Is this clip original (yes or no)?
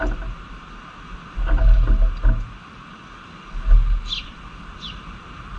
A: yes